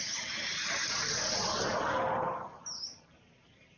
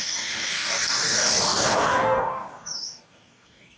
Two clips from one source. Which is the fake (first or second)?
second